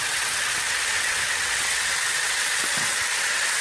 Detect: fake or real fake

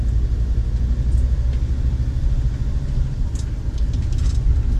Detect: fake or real real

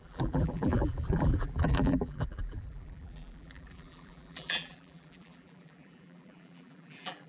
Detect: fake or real fake